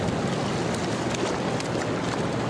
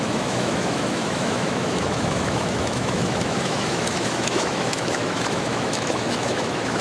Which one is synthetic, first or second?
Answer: second